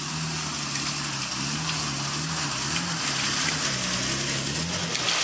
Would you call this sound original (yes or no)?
yes